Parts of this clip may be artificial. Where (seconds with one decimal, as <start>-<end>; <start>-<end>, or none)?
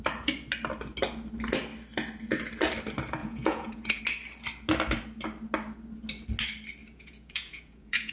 3.2-4.0; 6.8-8.1